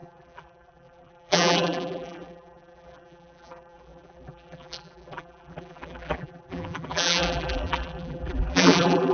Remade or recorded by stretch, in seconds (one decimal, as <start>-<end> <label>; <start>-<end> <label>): 0.0-9.1 remade